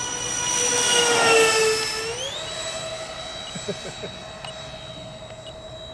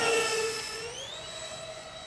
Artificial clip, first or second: second